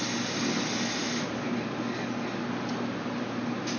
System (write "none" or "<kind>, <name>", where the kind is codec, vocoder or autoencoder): none